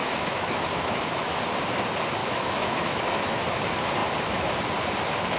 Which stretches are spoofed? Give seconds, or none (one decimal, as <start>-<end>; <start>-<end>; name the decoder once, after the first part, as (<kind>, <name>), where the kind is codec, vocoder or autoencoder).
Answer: 0.0-1.4 (autoencoder, DAC-VAE); 2.2-3.4